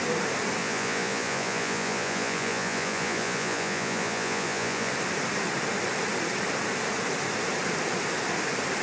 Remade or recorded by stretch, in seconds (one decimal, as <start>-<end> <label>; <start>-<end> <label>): 0.0-0.6 recorded; 0.6-4.9 remade; 4.9-8.8 recorded